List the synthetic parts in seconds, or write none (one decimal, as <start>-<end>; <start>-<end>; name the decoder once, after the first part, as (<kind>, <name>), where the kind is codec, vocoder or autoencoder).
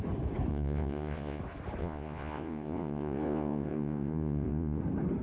0.5-1.4 (vocoder, Vocos); 1.8-4.8